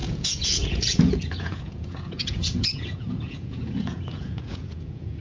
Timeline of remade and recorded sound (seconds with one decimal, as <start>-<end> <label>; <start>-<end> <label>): 0.0-5.2 remade